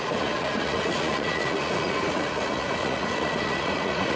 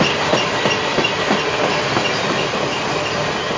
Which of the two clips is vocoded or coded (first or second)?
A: first